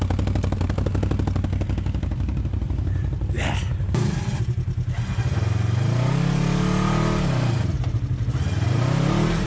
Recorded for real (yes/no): yes